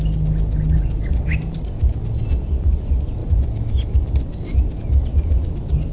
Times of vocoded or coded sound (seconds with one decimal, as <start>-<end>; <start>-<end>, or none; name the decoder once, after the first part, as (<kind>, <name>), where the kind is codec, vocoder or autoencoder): none